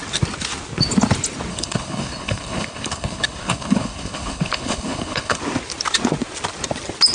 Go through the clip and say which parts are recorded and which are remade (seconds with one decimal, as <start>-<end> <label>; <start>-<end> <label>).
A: 0.0-1.5 recorded; 1.5-5.4 remade; 5.4-7.1 recorded